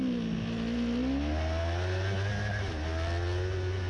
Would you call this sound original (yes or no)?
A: yes